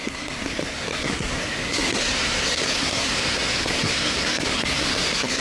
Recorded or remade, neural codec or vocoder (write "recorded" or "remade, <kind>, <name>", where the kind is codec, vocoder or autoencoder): remade, codec, SNAC